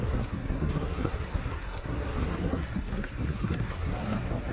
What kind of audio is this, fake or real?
fake